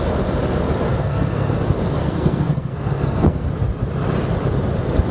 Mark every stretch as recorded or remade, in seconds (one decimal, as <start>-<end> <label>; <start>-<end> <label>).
0.0-0.9 recorded; 0.9-1.5 remade; 1.5-2.0 recorded; 2.0-3.5 remade; 3.5-5.1 recorded